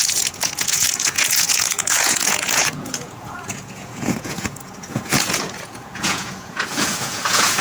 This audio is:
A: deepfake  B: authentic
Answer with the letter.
A